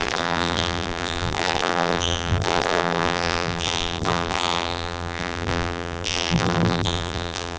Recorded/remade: remade